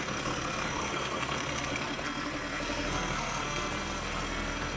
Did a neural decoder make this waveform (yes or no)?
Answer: yes